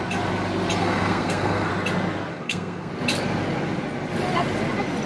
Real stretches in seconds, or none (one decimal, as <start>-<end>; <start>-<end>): 0.0-0.8; 1.7-2.3; 2.9-5.1

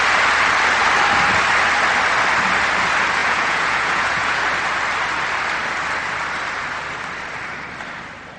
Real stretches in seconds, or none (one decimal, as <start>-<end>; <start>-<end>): 0.0-3.2; 4.4-8.4

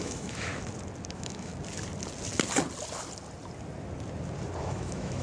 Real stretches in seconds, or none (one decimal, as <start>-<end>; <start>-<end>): 0.5-1.1; 1.5-4.6

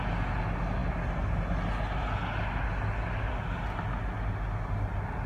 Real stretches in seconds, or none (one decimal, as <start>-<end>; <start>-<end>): 0.0-5.3

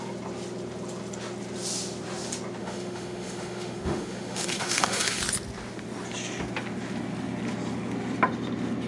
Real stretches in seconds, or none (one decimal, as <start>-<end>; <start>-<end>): 0.0-2.6; 5.2-8.9